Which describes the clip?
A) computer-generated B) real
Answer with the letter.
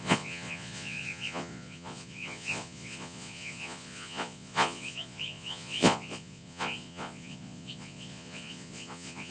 A